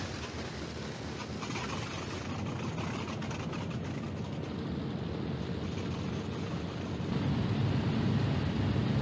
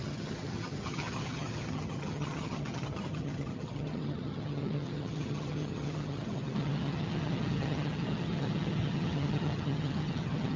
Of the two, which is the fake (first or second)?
second